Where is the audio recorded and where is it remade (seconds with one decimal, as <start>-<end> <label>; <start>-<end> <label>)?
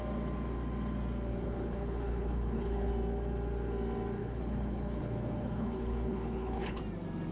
0.0-1.3 recorded; 1.3-2.9 remade; 2.9-4.2 recorded; 4.2-6.8 remade; 6.8-7.3 recorded